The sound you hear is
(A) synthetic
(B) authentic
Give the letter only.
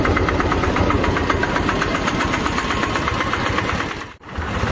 A